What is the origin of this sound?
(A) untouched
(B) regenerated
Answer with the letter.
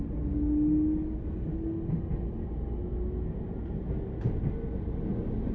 A